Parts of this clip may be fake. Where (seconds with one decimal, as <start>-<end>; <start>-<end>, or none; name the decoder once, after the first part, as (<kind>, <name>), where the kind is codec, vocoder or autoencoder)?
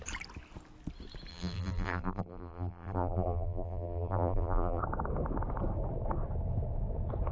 1.3-4.8 (vocoder, BigVGAN v2)